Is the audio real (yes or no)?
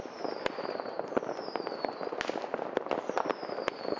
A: yes